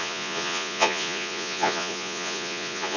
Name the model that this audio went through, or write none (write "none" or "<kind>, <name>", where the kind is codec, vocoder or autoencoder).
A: vocoder, Vocos